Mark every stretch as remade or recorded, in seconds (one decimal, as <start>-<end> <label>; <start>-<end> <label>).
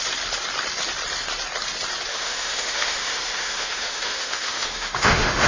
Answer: 0.0-2.1 recorded; 2.1-5.5 remade